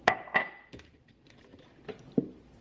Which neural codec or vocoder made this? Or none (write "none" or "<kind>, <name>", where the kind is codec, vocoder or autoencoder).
none